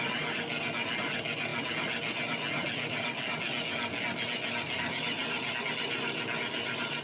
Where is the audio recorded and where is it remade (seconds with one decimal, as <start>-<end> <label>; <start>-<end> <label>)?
0.0-7.0 recorded